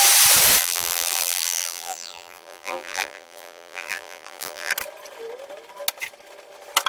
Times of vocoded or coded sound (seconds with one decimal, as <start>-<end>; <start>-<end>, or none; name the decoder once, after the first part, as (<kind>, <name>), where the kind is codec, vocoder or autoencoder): 0.6-4.7 (vocoder, BigVGAN v2)